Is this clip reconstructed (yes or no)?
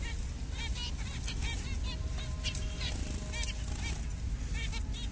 no